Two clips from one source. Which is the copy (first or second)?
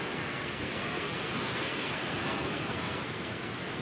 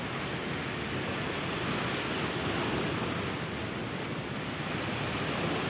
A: first